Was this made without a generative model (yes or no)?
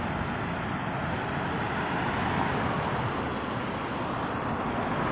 yes